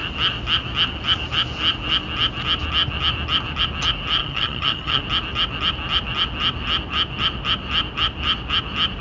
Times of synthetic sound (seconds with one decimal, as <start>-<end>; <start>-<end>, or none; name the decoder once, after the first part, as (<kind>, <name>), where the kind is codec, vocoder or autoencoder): 4.2-5.0 (vocoder, HiFi-GAN)